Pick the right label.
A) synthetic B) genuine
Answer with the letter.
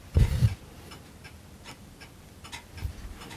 A